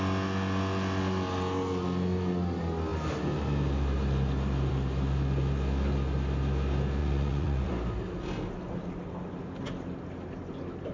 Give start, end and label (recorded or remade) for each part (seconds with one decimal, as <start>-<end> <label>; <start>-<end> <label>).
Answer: 0.0-7.0 recorded; 7.0-7.7 remade; 7.7-10.9 recorded